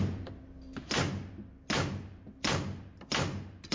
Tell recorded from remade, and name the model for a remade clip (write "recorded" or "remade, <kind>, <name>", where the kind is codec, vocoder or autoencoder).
recorded